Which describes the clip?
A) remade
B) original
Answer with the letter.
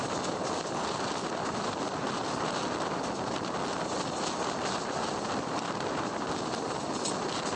B